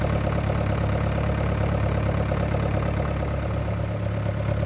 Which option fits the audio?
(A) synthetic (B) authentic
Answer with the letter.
B